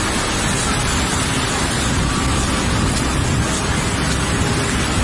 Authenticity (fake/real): real